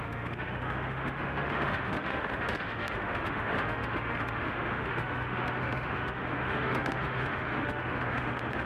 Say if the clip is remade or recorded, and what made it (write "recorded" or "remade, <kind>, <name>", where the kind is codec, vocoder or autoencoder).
remade, autoencoder, DAC-VAE